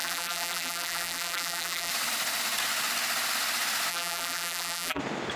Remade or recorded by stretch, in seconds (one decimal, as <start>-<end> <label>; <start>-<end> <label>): 0.0-1.9 remade; 1.9-3.9 recorded; 3.9-5.0 remade; 5.0-5.4 recorded